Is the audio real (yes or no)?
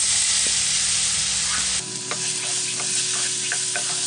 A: yes